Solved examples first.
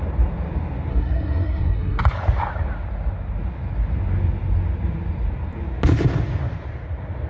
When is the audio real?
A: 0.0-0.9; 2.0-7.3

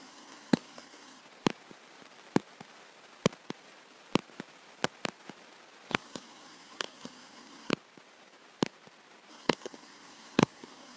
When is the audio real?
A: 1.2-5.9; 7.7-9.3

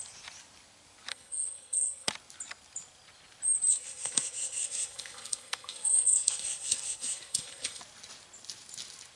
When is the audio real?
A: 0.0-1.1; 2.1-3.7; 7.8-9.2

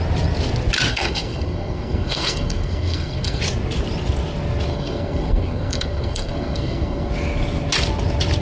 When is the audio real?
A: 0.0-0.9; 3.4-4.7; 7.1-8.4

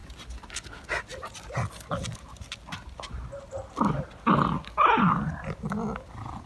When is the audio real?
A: 0.0-6.5